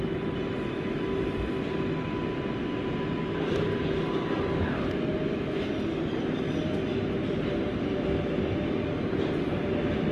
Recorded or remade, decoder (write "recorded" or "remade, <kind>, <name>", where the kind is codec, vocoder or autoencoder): recorded